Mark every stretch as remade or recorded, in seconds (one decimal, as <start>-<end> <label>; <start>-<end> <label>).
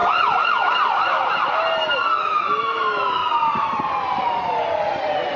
0.0-2.2 recorded; 2.2-3.2 remade; 3.2-5.4 recorded